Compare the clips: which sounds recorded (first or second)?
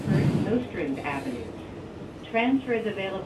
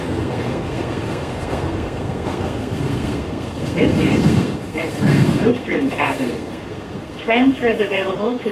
first